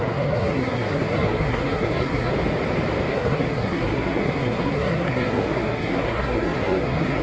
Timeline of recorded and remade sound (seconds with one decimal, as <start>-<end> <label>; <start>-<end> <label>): 0.0-2.3 remade; 2.3-3.1 recorded; 3.1-7.2 remade